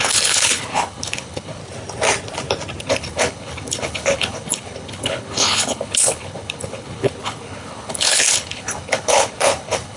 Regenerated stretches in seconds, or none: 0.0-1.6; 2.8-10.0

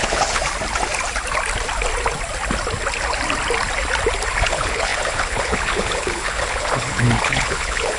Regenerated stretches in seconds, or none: 0.0-0.4; 4.4-8.0

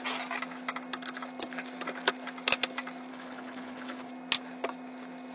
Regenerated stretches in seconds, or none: 3.1-4.1

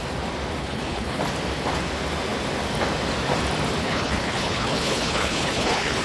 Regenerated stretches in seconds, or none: 0.6-1.2; 3.8-6.0

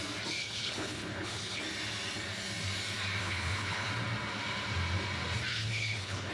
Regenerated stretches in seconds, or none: 0.4-1.6; 3.2-3.9; 5.5-6.3

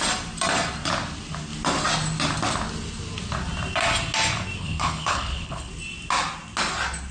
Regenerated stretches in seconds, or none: 4.6-5.7

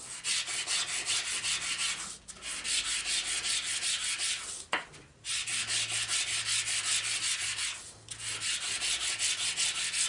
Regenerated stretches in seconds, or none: none